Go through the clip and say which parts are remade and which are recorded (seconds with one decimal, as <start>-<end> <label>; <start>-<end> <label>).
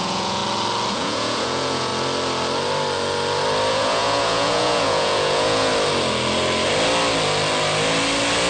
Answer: 0.0-0.4 remade; 0.4-0.9 recorded; 0.9-1.9 remade; 1.9-3.7 recorded; 3.7-5.7 remade; 5.7-8.5 recorded